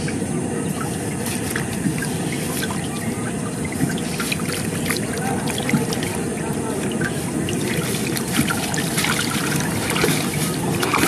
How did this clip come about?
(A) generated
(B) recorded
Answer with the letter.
B